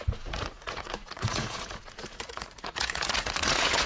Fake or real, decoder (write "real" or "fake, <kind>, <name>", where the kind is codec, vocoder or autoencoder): fake, vocoder, Vocos